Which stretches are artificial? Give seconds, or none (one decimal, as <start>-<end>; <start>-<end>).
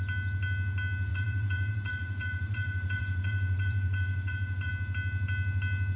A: 1.1-4.7